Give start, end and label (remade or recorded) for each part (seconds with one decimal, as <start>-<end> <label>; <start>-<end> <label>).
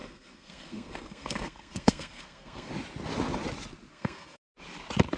0.0-2.7 remade; 2.7-3.9 recorded; 3.9-4.4 remade; 4.4-5.2 recorded